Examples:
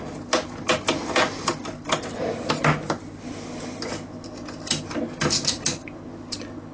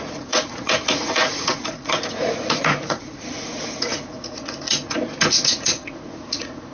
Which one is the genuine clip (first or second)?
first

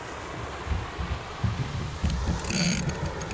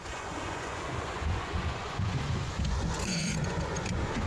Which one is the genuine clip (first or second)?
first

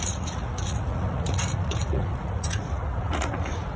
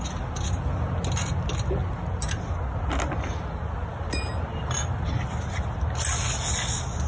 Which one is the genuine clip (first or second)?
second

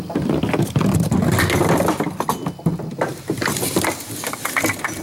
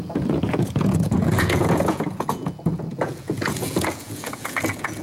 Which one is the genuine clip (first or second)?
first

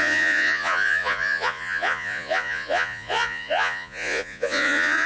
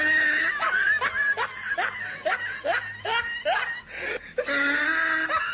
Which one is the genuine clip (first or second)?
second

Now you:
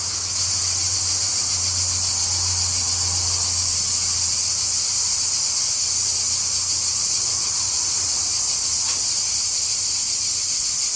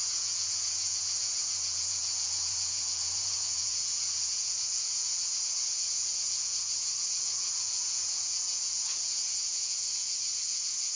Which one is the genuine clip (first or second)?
first